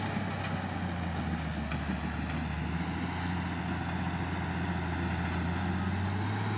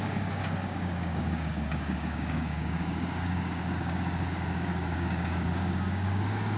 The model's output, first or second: second